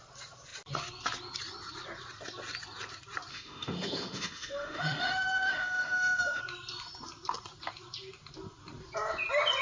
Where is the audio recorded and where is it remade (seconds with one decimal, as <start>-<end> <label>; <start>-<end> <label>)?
0.0-3.3 recorded; 3.3-6.4 remade; 6.4-9.6 recorded